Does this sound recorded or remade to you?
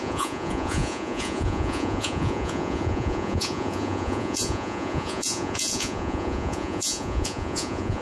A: remade